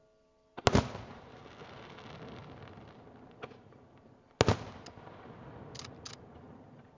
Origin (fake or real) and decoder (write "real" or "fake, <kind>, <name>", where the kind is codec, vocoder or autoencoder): real